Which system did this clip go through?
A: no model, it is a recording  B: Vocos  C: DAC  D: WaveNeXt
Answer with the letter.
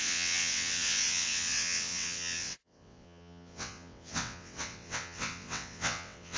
D